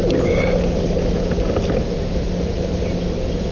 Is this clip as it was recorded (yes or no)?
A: yes